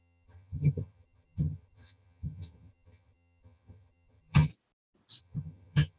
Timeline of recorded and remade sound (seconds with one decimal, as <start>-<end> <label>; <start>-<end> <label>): 0.0-4.5 remade; 4.5-5.2 recorded; 5.2-6.0 remade